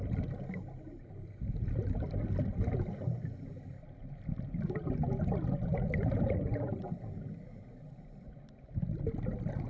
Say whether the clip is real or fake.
real